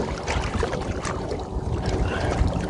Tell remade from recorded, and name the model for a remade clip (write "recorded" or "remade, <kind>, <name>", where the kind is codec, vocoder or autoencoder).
recorded